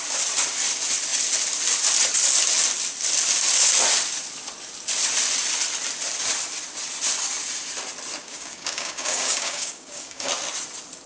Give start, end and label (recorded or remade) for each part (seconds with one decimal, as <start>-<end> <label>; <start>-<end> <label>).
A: 0.0-8.2 recorded; 8.2-10.3 remade; 10.3-11.1 recorded